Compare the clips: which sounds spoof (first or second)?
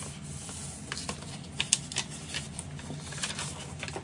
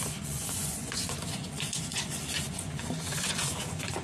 second